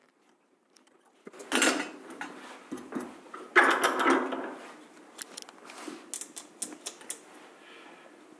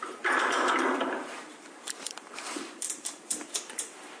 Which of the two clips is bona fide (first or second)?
first